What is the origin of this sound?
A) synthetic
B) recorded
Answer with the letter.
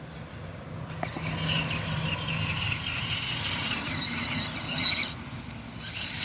B